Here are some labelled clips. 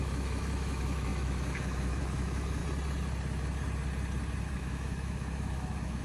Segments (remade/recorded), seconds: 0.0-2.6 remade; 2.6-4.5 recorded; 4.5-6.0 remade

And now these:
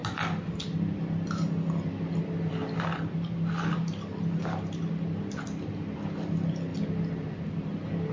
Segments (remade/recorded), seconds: 0.0-8.1 recorded

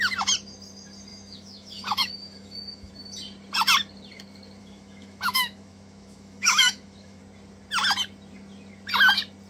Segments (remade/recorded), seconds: 0.0-1.1 recorded; 1.1-2.9 remade; 2.9-4.6 recorded; 4.6-7.2 remade; 7.2-9.5 recorded

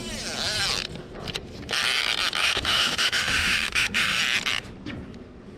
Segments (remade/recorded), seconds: 0.0-2.4 recorded; 2.4-4.2 remade; 4.2-5.6 recorded

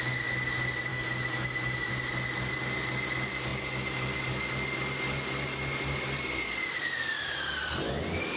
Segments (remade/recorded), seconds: 0.0-0.9 recorded; 0.9-1.9 remade; 1.9-8.4 recorded

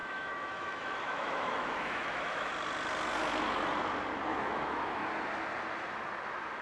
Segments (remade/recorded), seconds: 0.0-2.5 remade; 2.5-4.3 recorded; 4.3-5.1 remade; 5.1-6.6 recorded

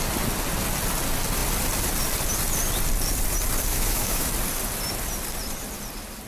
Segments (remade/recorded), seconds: 0.0-3.7 recorded; 3.7-4.3 remade; 4.3-6.3 recorded